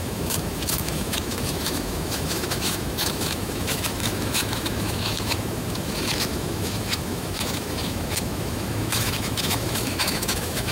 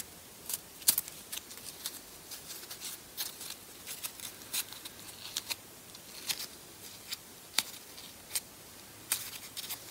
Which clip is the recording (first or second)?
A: second